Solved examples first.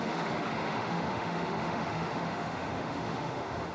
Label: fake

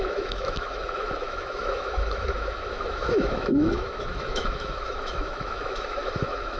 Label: fake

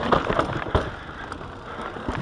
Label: real